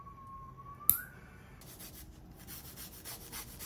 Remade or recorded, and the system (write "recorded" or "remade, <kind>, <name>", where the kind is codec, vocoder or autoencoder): recorded